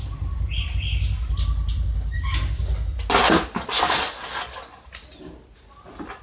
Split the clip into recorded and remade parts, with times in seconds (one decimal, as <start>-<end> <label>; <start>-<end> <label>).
0.0-6.2 recorded